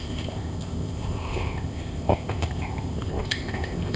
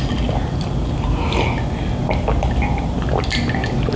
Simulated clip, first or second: first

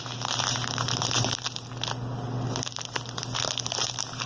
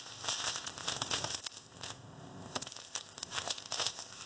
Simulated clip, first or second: second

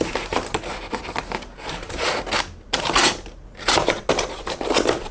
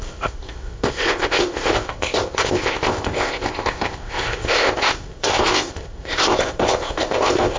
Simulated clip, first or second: second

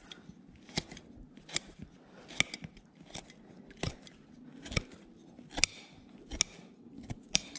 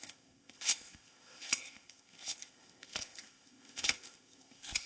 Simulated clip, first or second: second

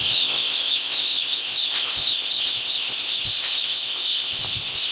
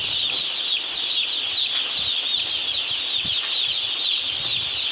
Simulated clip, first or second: first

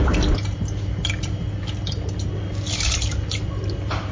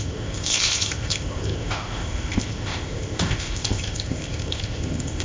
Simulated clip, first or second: second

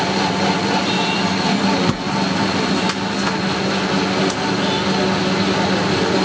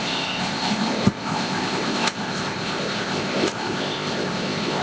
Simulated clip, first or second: second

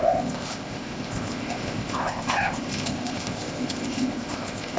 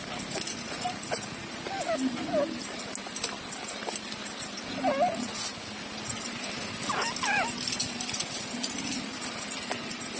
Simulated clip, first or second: first